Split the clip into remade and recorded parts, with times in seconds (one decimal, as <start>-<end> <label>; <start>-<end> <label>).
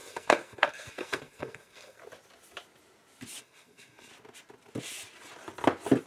0.0-2.0 remade; 2.0-3.4 recorded; 3.4-4.1 remade; 4.1-6.1 recorded